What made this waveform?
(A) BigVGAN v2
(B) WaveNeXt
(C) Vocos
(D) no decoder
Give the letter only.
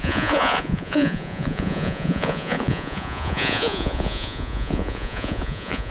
C